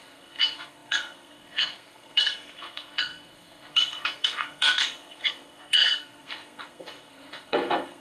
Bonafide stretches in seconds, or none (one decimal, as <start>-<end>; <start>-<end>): none